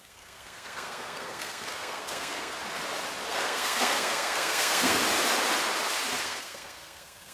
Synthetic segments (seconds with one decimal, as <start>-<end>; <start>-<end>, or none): 0.0-2.6; 3.3-5.0; 6.2-7.3